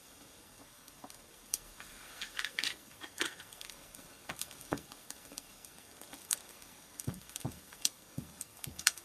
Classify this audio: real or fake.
fake